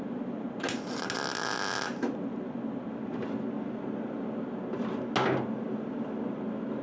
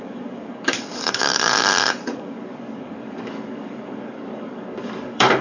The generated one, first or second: second